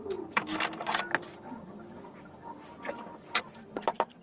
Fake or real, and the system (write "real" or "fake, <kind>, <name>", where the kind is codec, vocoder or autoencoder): real